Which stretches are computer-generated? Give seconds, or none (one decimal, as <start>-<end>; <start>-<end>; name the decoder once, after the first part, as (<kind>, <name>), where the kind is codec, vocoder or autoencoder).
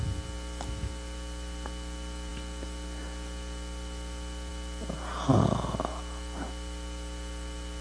none